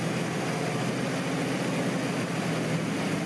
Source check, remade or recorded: recorded